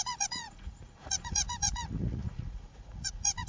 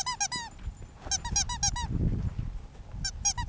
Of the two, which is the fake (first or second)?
first